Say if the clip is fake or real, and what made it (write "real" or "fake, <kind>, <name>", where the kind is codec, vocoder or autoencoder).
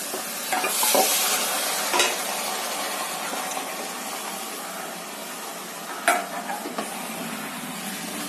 real